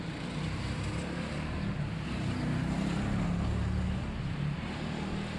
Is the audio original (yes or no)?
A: yes